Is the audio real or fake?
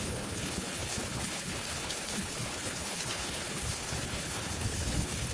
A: fake